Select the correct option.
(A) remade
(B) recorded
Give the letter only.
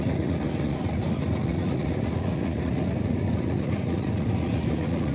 A